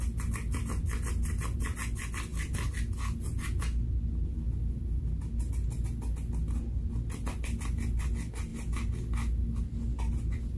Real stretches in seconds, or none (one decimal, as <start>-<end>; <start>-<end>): 0.0-10.6